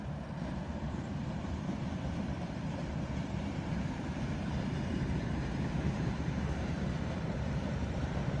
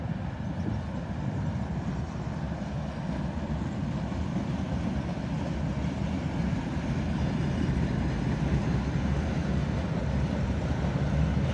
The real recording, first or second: second